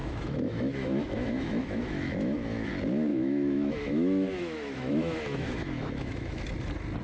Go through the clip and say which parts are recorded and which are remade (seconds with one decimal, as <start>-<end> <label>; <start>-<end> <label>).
0.0-2.7 remade; 2.7-3.1 recorded; 3.1-6.4 remade; 6.4-7.0 recorded